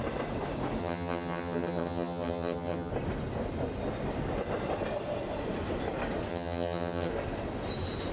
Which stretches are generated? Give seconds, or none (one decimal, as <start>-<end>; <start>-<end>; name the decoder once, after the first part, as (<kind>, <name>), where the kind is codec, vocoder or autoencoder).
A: 0.8-2.9 (vocoder, HiFi-GAN); 6.3-7.1